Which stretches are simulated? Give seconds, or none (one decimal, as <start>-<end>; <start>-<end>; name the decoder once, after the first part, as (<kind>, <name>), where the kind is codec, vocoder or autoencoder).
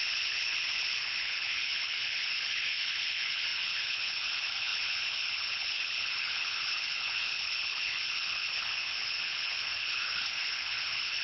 0.0-11.2 (codec, HILCodec)